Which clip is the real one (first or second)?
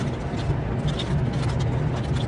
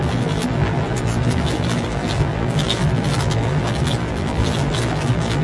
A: first